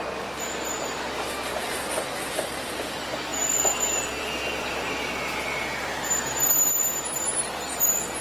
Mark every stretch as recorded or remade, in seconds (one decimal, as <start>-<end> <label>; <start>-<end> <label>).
0.0-8.2 recorded